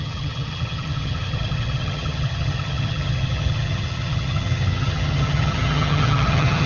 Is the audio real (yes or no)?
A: no